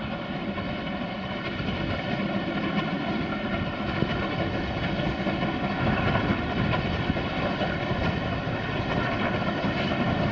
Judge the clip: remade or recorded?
recorded